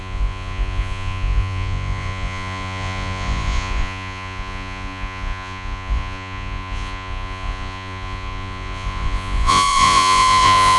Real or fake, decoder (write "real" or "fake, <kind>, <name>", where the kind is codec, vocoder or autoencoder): fake, vocoder, Vocos